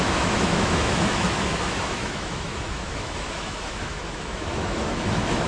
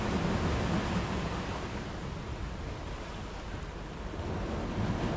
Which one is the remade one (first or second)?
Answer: first